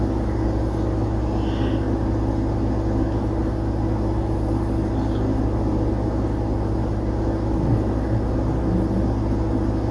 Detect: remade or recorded recorded